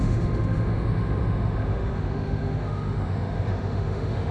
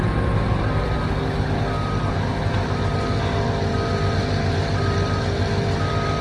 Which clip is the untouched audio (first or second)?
second